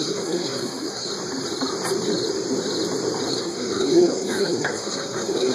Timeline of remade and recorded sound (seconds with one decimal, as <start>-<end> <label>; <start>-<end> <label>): 0.0-1.1 remade; 1.1-3.3 recorded; 3.3-5.5 remade